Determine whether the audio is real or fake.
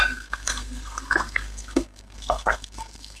fake